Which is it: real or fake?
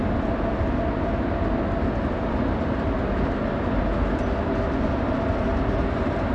real